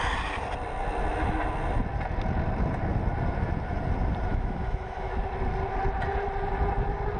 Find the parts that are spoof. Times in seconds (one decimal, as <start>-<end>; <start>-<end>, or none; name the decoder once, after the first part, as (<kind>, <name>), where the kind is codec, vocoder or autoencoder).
4.3-5.1 (autoencoder, DAC-VAE)